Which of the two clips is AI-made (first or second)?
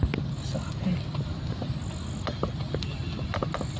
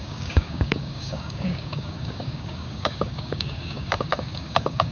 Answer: second